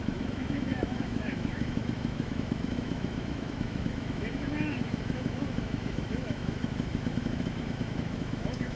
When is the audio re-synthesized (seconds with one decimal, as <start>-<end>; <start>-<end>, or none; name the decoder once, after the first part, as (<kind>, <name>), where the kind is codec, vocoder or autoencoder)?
0.0-8.8 (autoencoder, DAC-VAE)